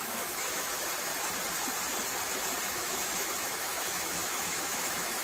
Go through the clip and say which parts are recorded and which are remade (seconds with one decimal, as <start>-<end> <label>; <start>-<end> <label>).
0.0-1.1 remade; 1.1-2.6 recorded; 2.6-5.2 remade